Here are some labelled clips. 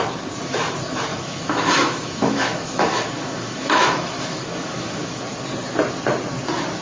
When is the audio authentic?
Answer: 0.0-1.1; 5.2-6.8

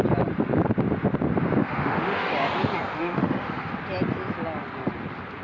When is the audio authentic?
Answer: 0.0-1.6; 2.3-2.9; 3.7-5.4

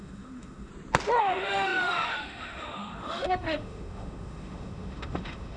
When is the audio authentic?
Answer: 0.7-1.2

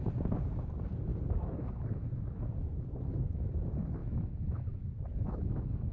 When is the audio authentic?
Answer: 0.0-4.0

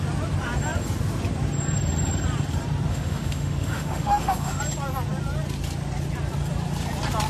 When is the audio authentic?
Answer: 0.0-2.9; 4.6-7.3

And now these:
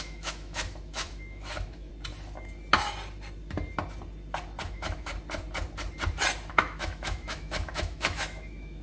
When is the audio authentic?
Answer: 1.9-4.6; 5.1-6.5

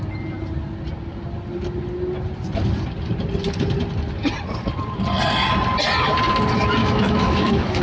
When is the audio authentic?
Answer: 0.0-6.8